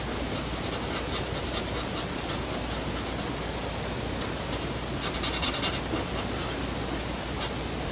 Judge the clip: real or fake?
real